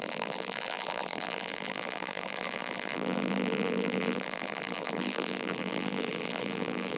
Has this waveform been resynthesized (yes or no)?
yes